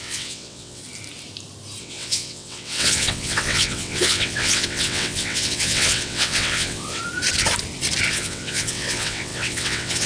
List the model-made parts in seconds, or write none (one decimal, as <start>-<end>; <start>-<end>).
0.0-0.8; 1.8-7.0; 8.1-10.1